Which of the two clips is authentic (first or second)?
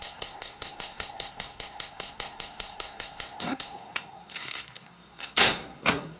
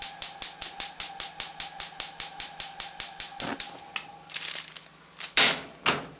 second